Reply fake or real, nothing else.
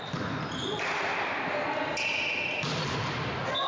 real